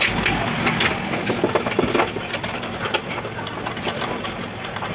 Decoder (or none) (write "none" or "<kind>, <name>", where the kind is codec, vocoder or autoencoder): none